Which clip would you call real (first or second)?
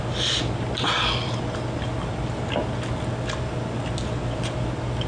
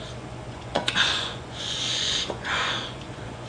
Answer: first